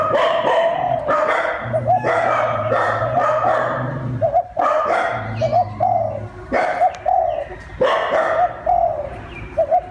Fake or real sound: fake